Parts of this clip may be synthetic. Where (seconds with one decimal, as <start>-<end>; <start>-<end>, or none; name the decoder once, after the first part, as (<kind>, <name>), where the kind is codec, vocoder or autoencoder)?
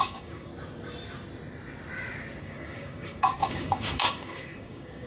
0.0-0.5 (codec, DAC); 2.4-5.1